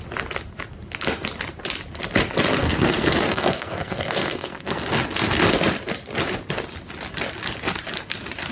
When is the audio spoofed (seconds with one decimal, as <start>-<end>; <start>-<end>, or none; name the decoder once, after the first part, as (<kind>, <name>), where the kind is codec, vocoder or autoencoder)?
2.6-4.8 (codec, SNAC)